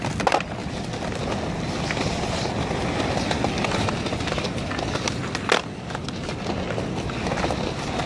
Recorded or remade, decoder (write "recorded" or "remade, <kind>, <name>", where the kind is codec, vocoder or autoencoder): recorded